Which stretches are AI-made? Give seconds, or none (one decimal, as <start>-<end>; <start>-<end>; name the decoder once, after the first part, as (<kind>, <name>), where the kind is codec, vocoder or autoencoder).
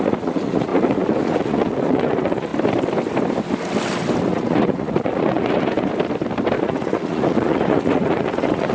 0.0-2.5 (vocoder, Vocos); 4.3-5.9; 6.6-8.7